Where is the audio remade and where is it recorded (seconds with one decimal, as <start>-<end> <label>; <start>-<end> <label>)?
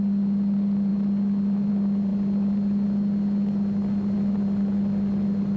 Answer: 0.0-5.6 recorded